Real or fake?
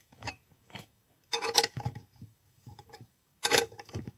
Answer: fake